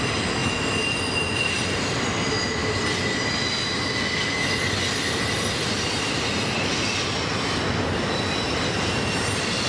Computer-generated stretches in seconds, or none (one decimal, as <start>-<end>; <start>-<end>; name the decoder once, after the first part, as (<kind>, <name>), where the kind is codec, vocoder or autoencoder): none